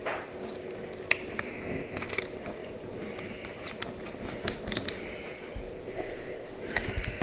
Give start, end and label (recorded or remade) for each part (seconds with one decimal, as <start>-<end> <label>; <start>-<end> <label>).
0.0-1.5 recorded; 1.5-2.2 remade; 2.2-5.7 recorded; 5.7-6.6 remade; 6.6-7.2 recorded